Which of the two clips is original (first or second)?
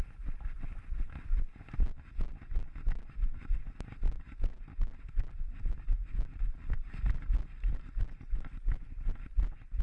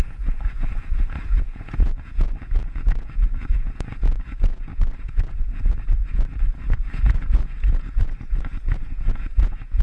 first